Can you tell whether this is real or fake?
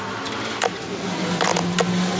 real